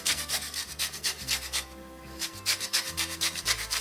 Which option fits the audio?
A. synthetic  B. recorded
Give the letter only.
A